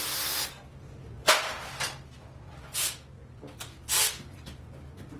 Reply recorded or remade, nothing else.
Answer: recorded